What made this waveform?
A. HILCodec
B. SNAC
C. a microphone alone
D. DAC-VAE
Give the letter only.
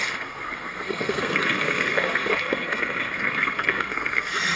B